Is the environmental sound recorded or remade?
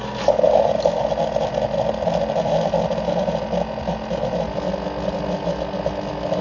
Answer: recorded